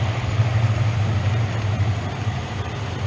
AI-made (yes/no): no